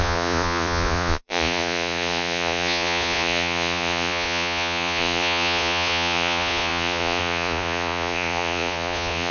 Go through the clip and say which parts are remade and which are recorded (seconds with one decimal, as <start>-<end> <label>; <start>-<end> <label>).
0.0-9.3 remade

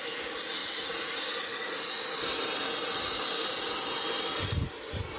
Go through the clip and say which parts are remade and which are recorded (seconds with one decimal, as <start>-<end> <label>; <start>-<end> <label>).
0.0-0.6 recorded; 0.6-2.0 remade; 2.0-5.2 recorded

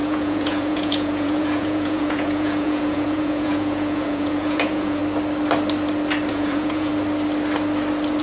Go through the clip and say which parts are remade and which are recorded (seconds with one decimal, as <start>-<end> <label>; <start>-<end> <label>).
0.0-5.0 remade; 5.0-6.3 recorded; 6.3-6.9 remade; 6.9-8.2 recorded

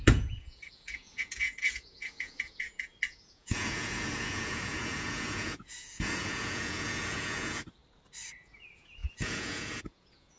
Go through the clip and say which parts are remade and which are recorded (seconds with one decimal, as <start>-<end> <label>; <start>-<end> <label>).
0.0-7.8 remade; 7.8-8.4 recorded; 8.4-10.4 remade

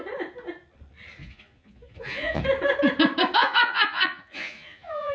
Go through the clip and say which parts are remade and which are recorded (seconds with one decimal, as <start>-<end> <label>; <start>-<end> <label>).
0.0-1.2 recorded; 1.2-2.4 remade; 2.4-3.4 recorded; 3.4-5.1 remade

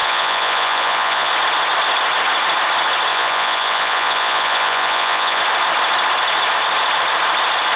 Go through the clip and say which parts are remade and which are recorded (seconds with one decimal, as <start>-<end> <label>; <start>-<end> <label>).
0.0-1.3 remade; 1.3-3.1 recorded; 3.1-5.4 remade; 5.4-7.8 recorded

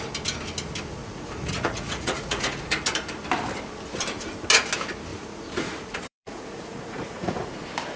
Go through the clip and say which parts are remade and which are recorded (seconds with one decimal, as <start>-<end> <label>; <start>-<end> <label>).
0.0-1.0 recorded; 1.0-2.6 remade; 2.6-5.1 recorded; 5.1-7.6 remade; 7.6-8.0 recorded

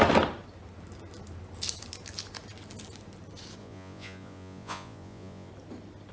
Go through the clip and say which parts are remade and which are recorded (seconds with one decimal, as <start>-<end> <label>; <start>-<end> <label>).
0.0-3.6 recorded; 3.6-5.5 remade; 5.5-6.1 recorded